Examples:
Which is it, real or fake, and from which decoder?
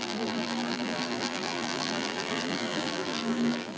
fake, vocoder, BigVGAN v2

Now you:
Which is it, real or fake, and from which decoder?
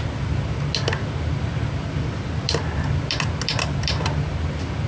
real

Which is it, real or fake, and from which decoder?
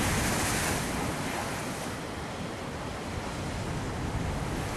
real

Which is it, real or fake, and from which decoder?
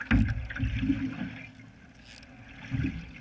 real